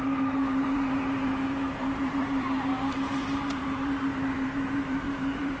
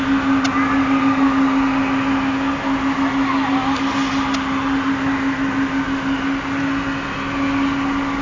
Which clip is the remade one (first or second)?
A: first